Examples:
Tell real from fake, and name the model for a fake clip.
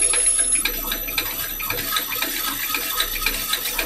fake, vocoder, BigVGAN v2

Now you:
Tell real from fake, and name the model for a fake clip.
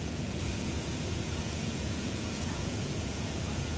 fake, vocoder, Vocos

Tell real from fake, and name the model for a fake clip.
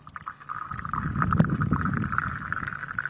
fake, vocoder, BigVGAN v2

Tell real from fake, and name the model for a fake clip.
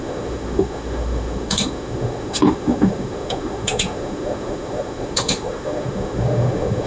fake, autoencoder, DAC-VAE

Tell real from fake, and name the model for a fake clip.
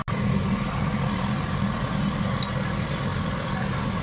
real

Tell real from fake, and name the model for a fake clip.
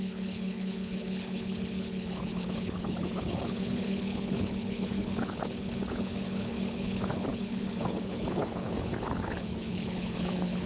fake, codec, HILCodec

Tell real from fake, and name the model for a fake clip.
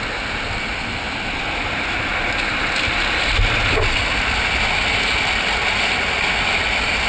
real